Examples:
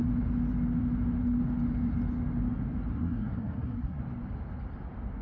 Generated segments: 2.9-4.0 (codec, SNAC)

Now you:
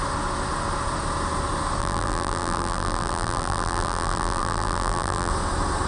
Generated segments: 1.8-5.3 (vocoder, BigVGAN v2)

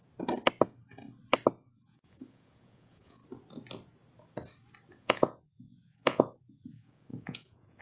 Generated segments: 1.7-3.2 (vocoder, Vocos); 4.9-7.8

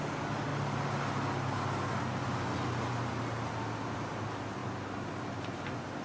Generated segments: none

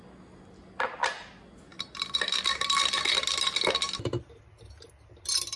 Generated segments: none

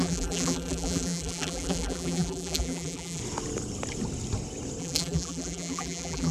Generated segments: 0.0-3.2 (vocoder, BigVGAN v2); 4.8-6.3